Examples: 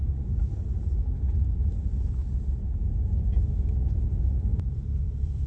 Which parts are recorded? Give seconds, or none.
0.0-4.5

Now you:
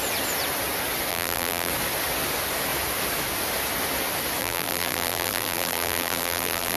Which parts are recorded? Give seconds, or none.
0.0-1.1; 1.7-4.4